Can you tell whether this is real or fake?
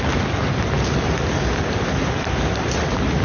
real